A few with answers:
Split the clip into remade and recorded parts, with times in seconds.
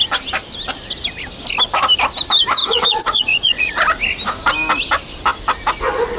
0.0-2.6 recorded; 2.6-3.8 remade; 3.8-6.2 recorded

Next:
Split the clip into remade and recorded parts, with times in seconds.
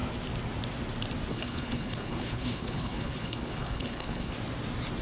0.0-1.3 recorded; 1.3-4.3 remade; 4.3-5.0 recorded